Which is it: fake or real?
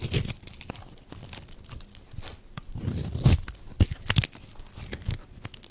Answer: real